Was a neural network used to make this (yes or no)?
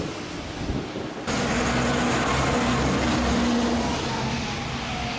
no